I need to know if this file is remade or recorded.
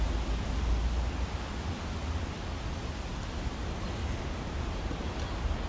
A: recorded